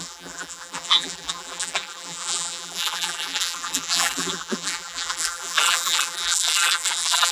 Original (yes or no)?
no